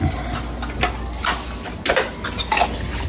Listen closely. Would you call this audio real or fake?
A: real